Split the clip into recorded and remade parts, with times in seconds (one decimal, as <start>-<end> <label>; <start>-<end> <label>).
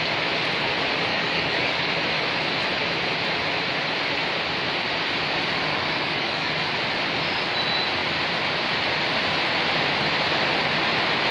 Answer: 0.0-1.1 recorded; 1.1-1.9 remade; 1.9-5.7 recorded; 5.7-6.5 remade; 6.5-11.3 recorded